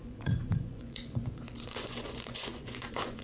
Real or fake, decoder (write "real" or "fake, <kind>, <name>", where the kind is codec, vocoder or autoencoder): fake, vocoder, Vocos